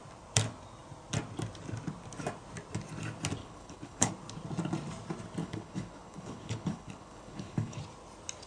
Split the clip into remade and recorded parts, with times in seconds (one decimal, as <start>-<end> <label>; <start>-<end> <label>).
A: 0.0-3.4 recorded; 3.4-4.1 remade; 4.1-5.4 recorded; 5.4-7.8 remade; 7.8-8.5 recorded